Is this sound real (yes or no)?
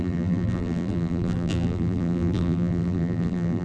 no